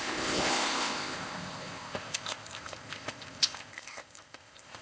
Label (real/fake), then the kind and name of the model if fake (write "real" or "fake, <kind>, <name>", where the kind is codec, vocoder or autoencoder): fake, codec, ZipCodec